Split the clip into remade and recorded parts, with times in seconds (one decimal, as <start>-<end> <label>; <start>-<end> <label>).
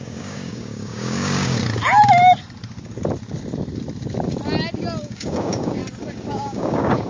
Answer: 0.0-1.6 remade; 1.6-5.0 recorded; 5.0-5.8 remade; 5.8-6.3 recorded; 6.3-7.1 remade